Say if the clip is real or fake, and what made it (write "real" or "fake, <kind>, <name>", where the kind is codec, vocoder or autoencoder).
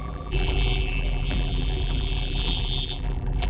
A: fake, vocoder, BigVGAN v2